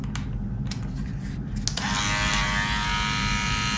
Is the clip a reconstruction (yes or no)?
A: no